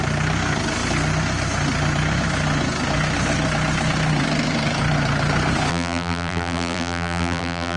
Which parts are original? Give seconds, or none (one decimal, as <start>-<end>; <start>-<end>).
0.0-5.7